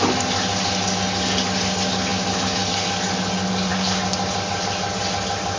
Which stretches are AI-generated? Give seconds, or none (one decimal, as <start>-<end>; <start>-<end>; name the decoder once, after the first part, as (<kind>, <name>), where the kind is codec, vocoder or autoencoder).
none